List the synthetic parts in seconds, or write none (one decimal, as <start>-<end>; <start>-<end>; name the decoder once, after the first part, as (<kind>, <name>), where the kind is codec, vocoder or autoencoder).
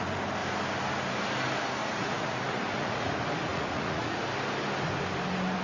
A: 1.8-3.1 (vocoder, Vocos); 3.5-4.2